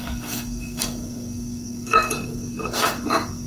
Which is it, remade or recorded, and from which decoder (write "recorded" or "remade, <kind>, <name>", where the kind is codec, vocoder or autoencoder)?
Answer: remade, codec, SNAC